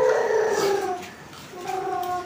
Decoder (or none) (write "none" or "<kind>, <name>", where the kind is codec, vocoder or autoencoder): none